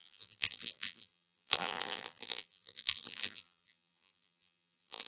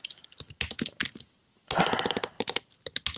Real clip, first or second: second